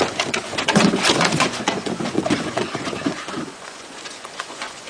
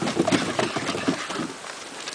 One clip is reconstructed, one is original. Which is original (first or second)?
second